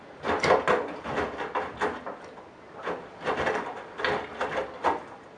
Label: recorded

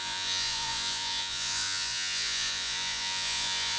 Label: remade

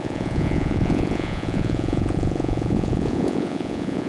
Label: remade